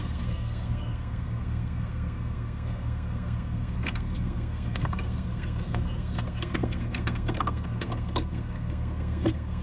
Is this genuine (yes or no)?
no